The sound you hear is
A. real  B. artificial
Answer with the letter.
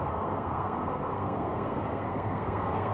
B